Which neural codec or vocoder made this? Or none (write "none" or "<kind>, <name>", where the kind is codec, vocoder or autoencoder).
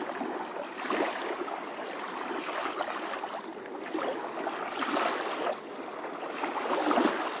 none